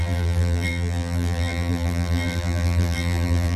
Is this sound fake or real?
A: fake